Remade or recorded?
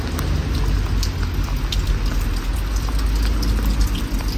recorded